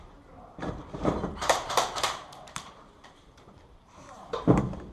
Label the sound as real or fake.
fake